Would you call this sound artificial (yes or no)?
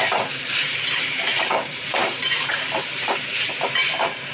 yes